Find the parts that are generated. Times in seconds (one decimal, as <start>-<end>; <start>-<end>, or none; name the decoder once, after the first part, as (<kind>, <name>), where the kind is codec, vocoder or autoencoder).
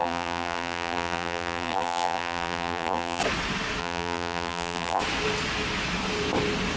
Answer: 0.0-3.2 (vocoder, BigVGAN v2); 3.8-5.0